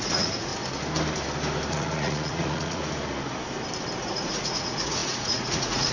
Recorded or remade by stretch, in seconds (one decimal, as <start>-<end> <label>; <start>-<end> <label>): 0.0-0.5 remade; 0.5-1.7 recorded; 1.7-2.8 remade; 2.8-4.0 recorded; 4.0-5.9 remade